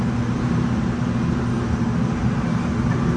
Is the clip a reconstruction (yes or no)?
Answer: no